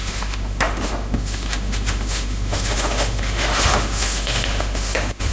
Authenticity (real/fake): fake